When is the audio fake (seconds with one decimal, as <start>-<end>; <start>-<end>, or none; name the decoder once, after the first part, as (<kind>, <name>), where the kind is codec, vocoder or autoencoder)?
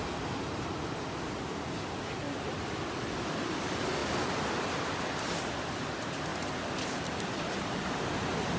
0.0-4.0 (vocoder, BigVGAN v2); 4.6-6.3; 7.0-8.6